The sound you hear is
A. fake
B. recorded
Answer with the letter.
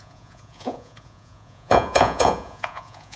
A